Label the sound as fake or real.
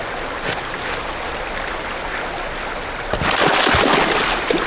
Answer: real